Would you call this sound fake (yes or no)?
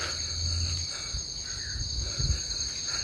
no